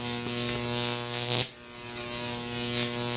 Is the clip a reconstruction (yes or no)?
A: no